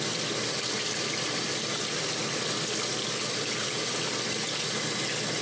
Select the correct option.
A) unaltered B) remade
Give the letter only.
A